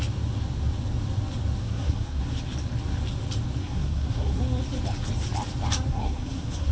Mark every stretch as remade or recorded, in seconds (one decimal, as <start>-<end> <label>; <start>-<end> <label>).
0.0-1.6 recorded; 1.6-2.2 remade; 2.2-3.6 recorded; 3.6-4.4 remade; 4.4-5.9 recorded; 5.9-6.7 remade